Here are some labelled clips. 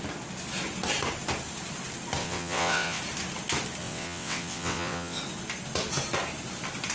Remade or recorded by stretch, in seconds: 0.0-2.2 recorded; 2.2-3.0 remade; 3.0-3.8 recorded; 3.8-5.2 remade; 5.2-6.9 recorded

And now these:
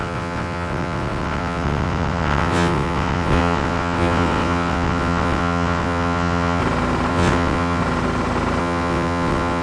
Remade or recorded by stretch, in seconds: 0.0-6.6 remade; 6.6-7.1 recorded; 7.1-7.8 remade; 7.8-8.6 recorded; 8.6-9.6 remade

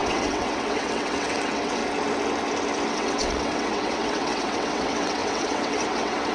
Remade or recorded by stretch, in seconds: 0.0-1.8 remade; 1.8-2.9 recorded; 2.9-6.3 remade

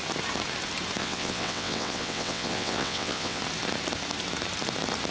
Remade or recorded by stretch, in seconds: 0.0-1.0 recorded; 1.0-3.4 remade; 3.4-5.1 recorded

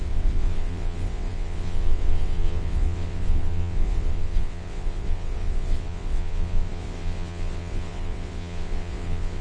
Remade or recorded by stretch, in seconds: 0.0-9.4 remade

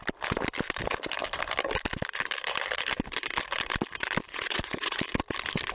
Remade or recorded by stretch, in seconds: 0.0-4.3 recorded; 4.3-5.0 remade; 5.0-5.7 recorded

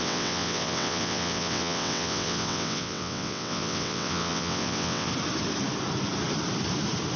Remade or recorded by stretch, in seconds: 0.0-5.1 remade; 5.1-7.2 recorded

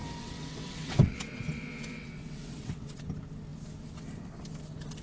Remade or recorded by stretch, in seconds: 0.0-3.0 remade; 3.0-5.0 recorded